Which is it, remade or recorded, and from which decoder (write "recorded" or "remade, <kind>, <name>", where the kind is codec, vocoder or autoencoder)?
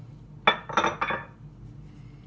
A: recorded